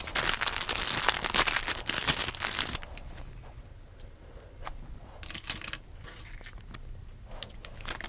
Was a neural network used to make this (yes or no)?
no